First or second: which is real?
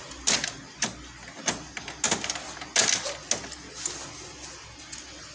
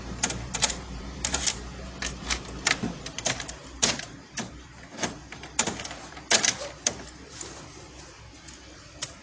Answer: first